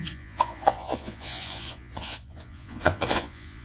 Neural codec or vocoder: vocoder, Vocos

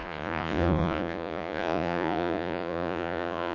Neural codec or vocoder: vocoder, Vocos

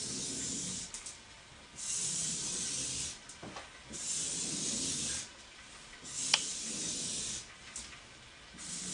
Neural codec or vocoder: none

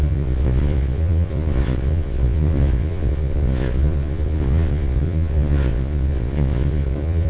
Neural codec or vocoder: vocoder, Vocos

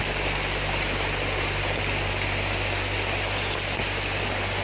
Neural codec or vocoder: none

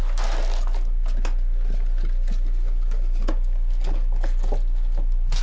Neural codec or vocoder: none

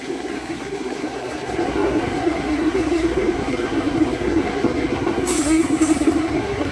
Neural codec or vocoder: codec, SNAC